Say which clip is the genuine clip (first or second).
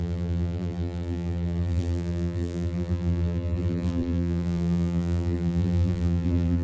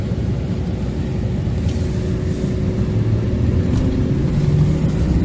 second